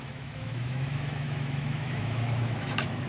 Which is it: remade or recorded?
remade